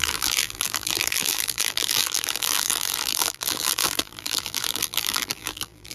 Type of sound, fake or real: fake